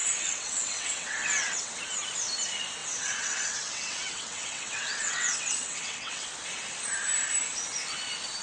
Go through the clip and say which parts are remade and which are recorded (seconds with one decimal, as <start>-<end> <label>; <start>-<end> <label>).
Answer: 0.0-1.7 remade; 1.7-2.8 recorded; 2.8-6.3 remade; 6.3-8.4 recorded